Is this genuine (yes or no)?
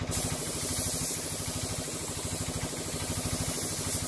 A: yes